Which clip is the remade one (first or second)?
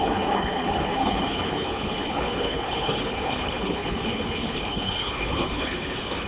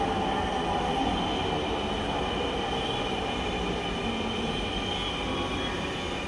first